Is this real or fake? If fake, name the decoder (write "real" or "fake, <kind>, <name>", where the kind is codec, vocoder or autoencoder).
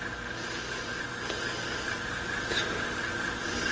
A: real